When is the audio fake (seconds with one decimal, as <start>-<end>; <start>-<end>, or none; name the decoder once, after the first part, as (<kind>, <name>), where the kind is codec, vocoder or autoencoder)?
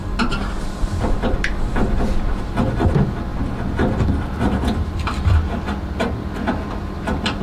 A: 0.8-1.4 (vocoder, BigVGAN v2)